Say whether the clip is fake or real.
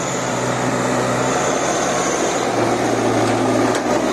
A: real